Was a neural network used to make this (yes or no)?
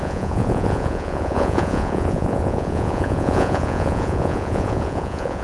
yes